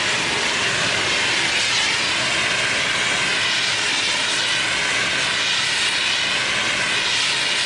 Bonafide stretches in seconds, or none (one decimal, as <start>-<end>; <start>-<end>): 0.0-7.7